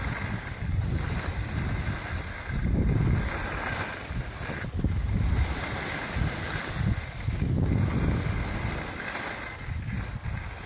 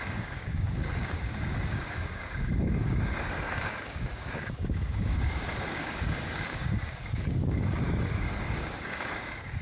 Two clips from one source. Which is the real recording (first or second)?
first